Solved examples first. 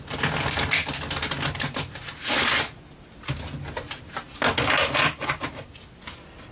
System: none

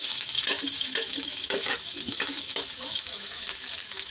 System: autoencoder, DAC-VAE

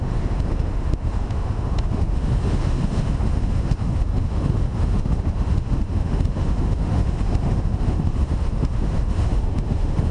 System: autoencoder, DAC-VAE